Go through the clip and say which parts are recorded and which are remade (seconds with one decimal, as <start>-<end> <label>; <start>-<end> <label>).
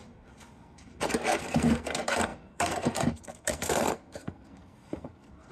0.0-5.5 remade